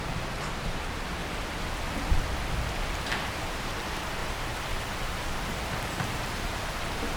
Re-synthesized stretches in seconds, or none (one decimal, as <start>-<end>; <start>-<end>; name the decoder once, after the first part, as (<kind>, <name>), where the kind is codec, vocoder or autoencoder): 0.0-1.2 (vocoder, BigVGAN v2); 3.0-7.2